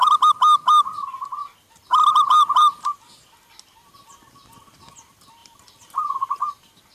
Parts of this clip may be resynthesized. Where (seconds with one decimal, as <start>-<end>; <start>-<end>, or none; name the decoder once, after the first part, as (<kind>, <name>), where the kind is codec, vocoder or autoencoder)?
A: none